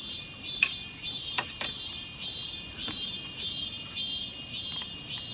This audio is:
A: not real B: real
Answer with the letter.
A